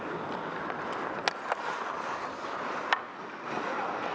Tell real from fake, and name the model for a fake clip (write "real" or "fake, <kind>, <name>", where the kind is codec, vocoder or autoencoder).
real